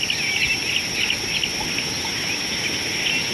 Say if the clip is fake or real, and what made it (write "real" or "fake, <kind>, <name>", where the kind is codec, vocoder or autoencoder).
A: real